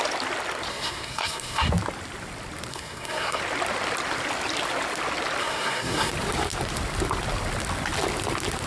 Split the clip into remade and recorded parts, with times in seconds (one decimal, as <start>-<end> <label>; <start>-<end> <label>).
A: 0.0-0.7 recorded; 0.7-1.7 remade; 1.7-2.7 recorded; 2.7-3.4 remade; 3.4-5.4 recorded; 5.4-6.1 remade; 6.1-8.7 recorded